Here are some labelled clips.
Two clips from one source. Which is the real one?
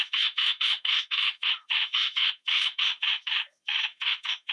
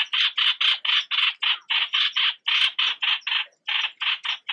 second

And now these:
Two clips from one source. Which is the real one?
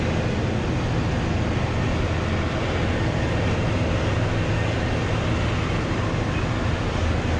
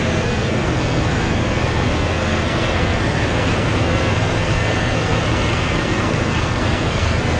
first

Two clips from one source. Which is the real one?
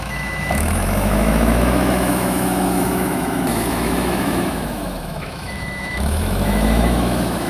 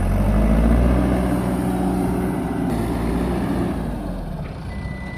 second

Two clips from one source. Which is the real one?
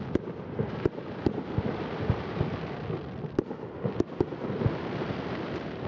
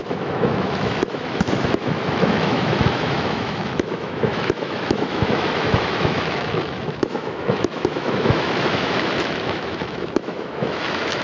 first